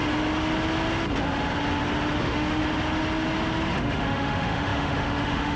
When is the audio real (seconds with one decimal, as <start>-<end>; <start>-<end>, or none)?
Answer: 0.0-2.2; 2.6-3.7